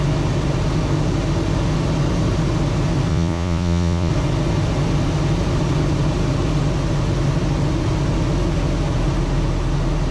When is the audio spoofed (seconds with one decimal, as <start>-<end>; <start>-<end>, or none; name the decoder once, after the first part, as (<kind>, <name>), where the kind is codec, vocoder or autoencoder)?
3.1-4.1 (vocoder, Vocos)